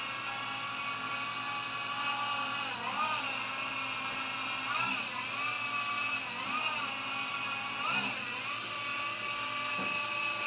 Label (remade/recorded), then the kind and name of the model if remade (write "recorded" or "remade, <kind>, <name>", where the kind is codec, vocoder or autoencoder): recorded